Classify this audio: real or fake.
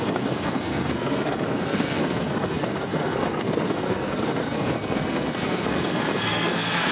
fake